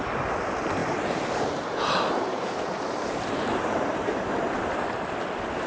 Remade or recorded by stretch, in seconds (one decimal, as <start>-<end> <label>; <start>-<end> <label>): 0.0-0.8 recorded; 0.8-4.2 remade; 4.2-5.7 recorded